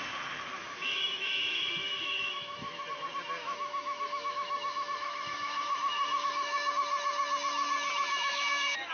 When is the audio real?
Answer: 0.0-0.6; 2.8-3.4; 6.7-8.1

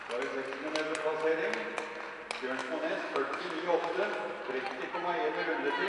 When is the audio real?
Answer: 0.0-2.6; 4.4-5.9

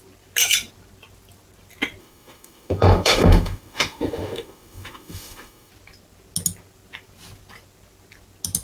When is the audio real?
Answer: 0.0-2.0; 5.7-8.6

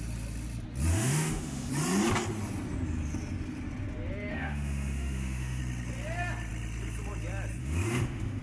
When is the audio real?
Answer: 0.0-0.9; 1.7-4.3; 5.6-7.6